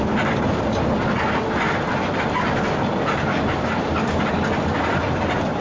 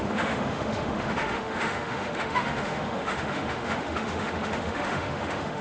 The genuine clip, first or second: first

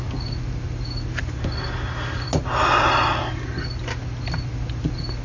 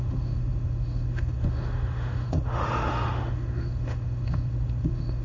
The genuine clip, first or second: first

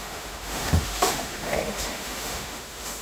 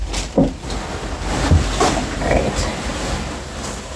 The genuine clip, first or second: second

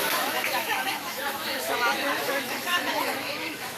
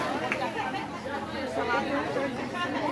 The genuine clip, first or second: second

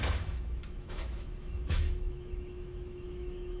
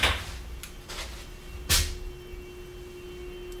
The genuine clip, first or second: second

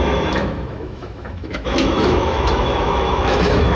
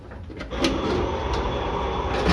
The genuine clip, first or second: second